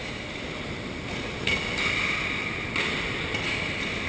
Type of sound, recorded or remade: recorded